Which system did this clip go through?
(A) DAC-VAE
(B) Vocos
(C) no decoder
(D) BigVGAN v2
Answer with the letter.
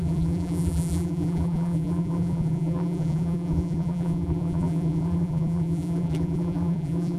D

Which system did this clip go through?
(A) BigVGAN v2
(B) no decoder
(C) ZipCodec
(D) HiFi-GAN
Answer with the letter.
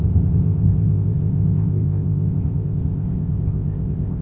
C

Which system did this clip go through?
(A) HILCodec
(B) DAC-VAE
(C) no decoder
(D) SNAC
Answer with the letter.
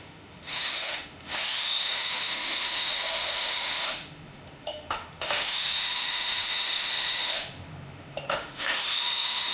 B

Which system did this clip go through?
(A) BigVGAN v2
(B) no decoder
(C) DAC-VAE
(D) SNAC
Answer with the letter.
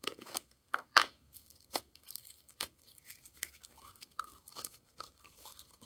D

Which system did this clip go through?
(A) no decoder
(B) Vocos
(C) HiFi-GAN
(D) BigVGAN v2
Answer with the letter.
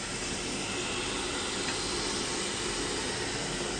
A